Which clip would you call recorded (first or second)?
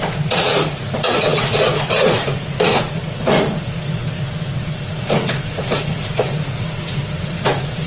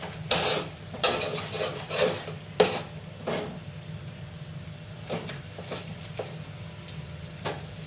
second